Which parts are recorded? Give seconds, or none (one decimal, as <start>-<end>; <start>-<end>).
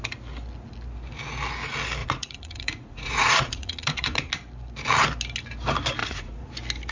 0.0-2.0; 4.3-6.0; 6.5-6.9